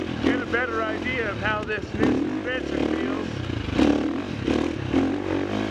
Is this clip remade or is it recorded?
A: recorded